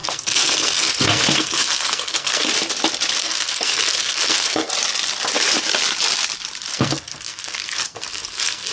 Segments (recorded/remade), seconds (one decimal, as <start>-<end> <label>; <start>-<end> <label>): 0.0-2.5 remade; 2.5-3.2 recorded; 3.2-4.7 remade; 4.7-6.7 recorded; 6.7-8.7 remade